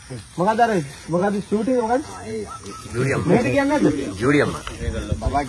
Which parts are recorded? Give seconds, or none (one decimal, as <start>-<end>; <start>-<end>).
0.0-1.2; 4.5-5.5